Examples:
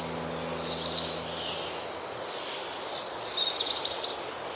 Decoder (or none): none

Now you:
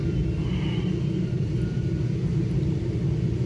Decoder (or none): none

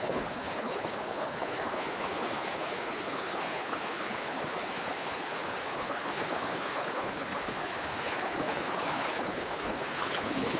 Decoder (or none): codec, HILCodec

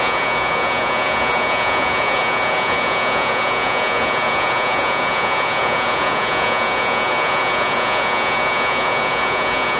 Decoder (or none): vocoder, Vocos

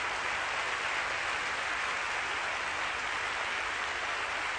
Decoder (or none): none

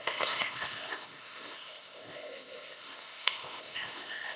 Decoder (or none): codec, ZipCodec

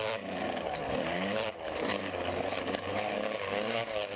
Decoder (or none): codec, DAC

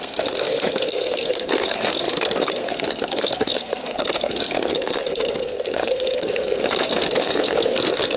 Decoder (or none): codec, SNAC